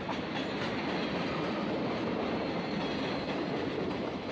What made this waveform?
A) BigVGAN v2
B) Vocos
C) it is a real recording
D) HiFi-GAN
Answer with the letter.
C